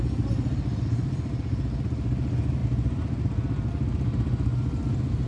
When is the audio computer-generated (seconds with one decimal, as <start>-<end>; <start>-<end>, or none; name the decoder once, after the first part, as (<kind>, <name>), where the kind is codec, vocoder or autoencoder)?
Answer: none